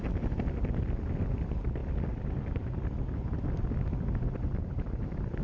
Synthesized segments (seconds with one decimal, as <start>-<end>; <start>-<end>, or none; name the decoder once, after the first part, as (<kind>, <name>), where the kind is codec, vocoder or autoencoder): none